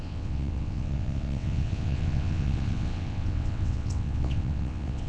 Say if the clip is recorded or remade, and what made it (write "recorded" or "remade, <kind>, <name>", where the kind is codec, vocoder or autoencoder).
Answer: remade, vocoder, WaveNeXt